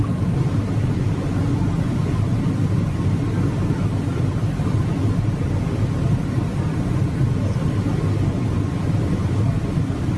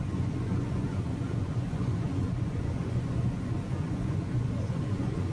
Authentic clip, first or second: first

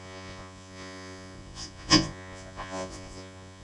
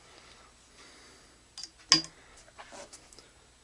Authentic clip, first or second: second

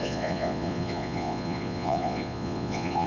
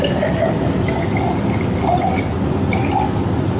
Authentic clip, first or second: second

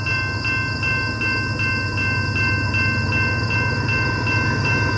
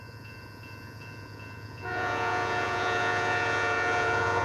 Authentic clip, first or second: first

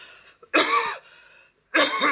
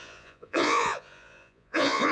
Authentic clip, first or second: first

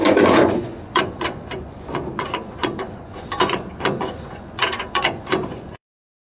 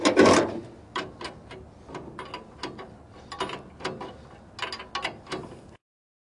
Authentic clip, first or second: second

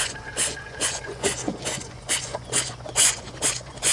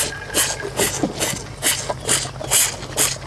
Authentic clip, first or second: second